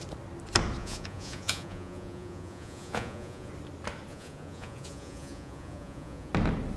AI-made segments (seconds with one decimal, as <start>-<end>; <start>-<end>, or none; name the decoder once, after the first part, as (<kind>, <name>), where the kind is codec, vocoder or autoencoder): 0.8-3.5 (vocoder, Vocos); 4.1-6.3